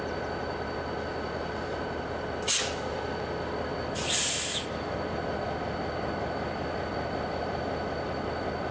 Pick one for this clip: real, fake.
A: real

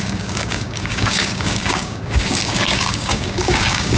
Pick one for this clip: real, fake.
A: fake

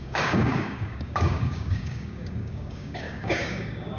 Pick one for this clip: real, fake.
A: fake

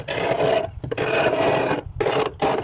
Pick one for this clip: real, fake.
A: real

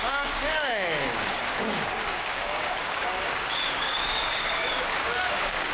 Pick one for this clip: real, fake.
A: fake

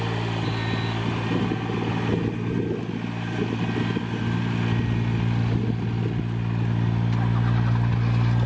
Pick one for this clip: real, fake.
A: real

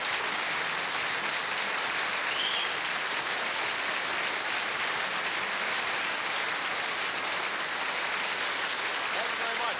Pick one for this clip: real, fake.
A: real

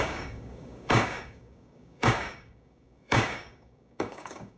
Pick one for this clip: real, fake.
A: fake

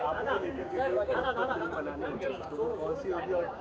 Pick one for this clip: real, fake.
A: fake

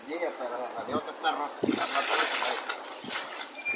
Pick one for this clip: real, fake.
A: real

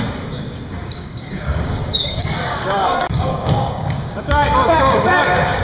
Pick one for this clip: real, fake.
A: fake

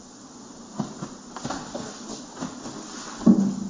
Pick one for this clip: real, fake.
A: real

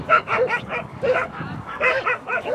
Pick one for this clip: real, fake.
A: fake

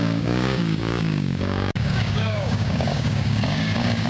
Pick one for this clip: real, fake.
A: fake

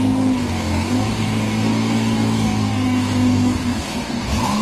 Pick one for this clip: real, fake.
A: fake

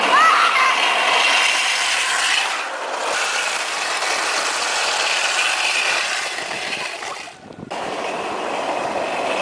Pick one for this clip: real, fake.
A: real